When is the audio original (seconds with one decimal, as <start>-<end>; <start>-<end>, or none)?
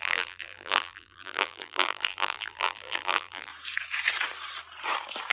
3.5-5.3